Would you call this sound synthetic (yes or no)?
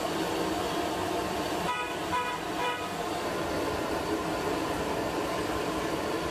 yes